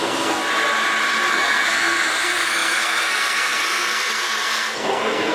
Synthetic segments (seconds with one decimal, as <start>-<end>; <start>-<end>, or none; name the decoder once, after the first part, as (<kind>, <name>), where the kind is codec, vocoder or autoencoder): 0.0-0.4 (codec, SNAC); 1.3-5.3